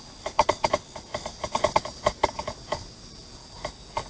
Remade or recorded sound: recorded